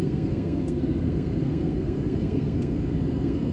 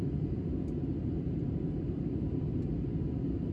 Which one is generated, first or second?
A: first